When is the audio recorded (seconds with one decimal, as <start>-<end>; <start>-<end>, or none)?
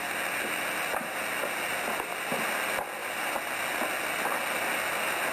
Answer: 0.0-5.3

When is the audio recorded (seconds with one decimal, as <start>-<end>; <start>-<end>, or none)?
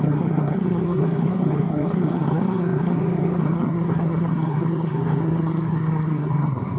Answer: none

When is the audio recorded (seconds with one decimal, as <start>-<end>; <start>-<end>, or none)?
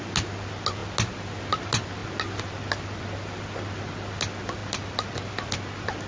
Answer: 0.0-4.6; 5.2-6.1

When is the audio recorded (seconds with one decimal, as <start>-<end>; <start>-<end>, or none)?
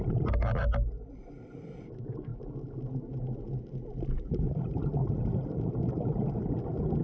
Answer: 0.0-7.0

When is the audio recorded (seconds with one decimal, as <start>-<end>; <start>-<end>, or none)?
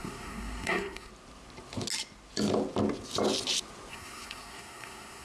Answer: 1.1-3.9